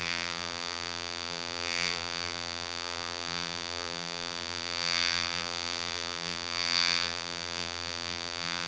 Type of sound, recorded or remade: remade